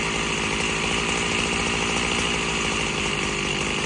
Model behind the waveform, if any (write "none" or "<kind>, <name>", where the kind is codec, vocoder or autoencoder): none